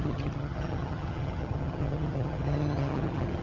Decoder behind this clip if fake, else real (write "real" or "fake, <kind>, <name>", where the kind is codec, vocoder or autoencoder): fake, vocoder, HiFi-GAN